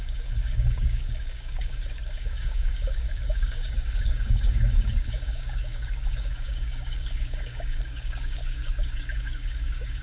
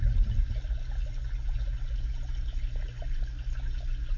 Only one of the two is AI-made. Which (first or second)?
first